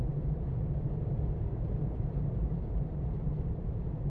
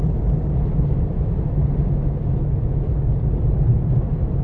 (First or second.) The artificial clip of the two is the first